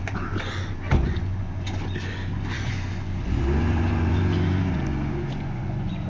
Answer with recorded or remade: remade